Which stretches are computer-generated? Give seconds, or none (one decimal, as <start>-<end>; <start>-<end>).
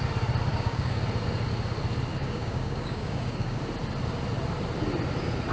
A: 0.5-1.0; 2.1-3.6